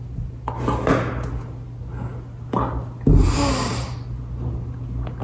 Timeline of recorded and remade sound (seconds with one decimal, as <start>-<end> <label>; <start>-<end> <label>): 0.0-5.2 recorded